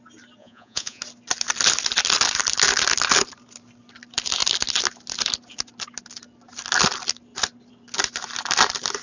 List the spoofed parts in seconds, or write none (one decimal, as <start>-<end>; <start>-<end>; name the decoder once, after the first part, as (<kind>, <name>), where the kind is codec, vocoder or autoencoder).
0.4-1.0 (vocoder, Vocos)